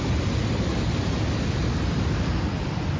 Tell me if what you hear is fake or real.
real